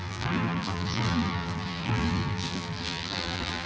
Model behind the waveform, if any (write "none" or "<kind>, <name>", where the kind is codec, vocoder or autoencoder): vocoder, BigVGAN v2